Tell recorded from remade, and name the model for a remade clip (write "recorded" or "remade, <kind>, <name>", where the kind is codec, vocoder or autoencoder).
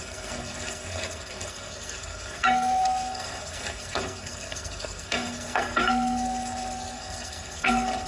remade, codec, SNAC